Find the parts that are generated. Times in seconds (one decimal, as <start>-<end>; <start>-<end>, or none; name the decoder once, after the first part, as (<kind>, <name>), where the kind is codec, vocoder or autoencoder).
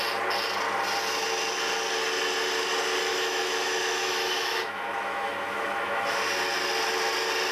3.1-6.2 (autoencoder, DAC-VAE)